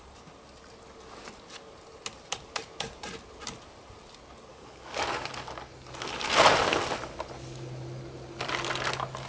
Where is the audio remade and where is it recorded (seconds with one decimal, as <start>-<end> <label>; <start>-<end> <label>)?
0.0-4.5 recorded; 4.5-5.3 remade; 5.3-9.3 recorded